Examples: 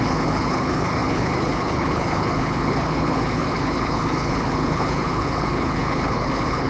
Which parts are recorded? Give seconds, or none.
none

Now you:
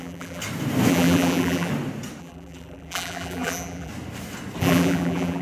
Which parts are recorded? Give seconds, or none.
0.4-0.9; 1.7-2.2; 3.9-4.6